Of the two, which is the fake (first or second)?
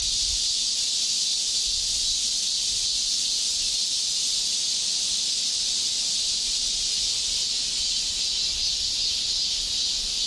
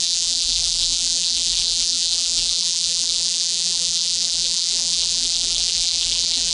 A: second